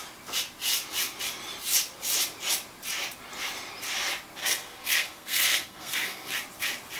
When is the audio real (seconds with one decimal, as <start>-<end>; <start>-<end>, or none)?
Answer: 0.0-4.4; 6.4-7.0